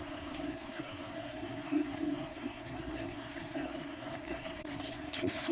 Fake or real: fake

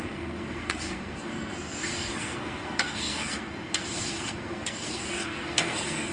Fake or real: fake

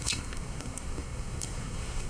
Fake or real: fake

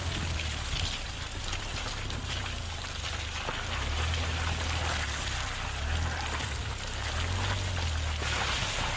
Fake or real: real